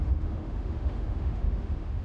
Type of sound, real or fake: fake